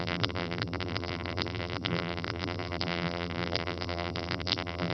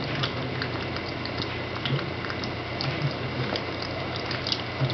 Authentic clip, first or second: second